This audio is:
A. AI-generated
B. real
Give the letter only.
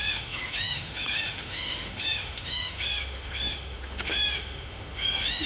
A